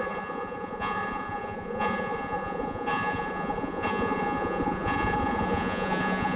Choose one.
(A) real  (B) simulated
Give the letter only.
B